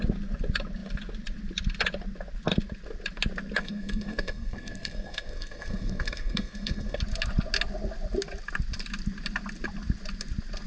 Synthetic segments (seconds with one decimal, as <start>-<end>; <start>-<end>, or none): 3.6-7.0